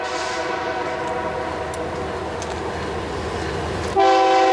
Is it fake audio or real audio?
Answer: real